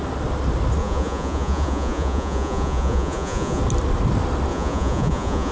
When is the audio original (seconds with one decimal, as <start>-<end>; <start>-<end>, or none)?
0.0-0.8; 3.6-4.5